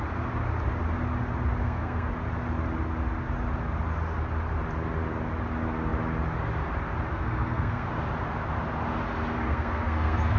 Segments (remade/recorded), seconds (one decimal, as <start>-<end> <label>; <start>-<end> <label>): 0.0-1.6 recorded; 1.6-2.1 remade; 2.1-7.1 recorded; 7.1-7.9 remade; 7.9-9.5 recorded; 9.5-10.4 remade